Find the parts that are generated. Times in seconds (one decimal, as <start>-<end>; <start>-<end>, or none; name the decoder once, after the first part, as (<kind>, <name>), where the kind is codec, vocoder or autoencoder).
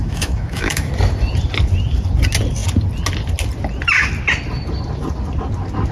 0.0-0.9 (autoencoder, DAC-VAE)